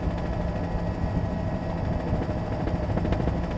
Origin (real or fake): real